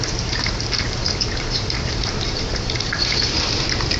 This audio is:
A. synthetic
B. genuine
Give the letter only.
A